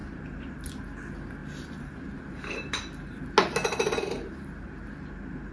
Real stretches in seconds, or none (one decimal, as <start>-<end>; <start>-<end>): 0.0-5.5